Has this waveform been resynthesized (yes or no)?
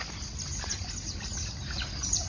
no